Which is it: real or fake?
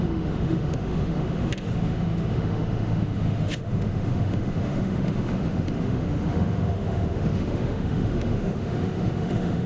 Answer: fake